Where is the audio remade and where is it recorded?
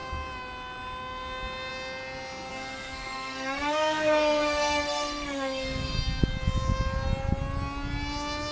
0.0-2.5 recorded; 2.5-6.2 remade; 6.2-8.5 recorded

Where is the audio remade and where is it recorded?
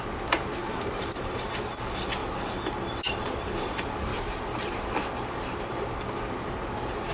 0.0-0.6 recorded; 0.6-1.1 remade; 1.1-4.1 recorded; 4.1-4.7 remade; 4.7-7.1 recorded